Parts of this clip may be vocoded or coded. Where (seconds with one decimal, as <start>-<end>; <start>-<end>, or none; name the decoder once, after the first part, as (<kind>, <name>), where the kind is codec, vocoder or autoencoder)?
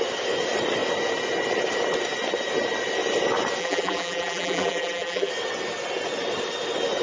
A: 3.6-5.3 (vocoder, BigVGAN v2)